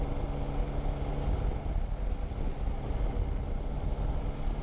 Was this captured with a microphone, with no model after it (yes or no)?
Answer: yes